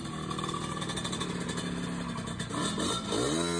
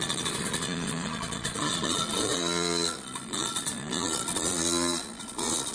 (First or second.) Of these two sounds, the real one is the first